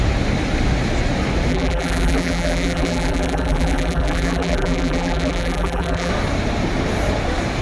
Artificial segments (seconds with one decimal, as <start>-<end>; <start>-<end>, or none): 1.5-6.1